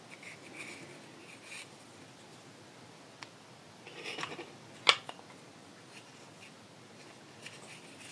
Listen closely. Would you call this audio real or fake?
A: real